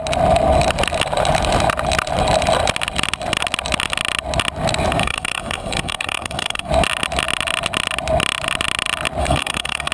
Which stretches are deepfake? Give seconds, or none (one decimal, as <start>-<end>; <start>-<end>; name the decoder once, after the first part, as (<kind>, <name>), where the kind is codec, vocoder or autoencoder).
5.0-6.7 (codec, SNAC); 9.2-9.9